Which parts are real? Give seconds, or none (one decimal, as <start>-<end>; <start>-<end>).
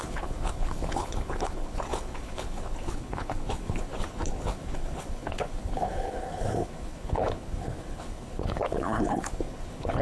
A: none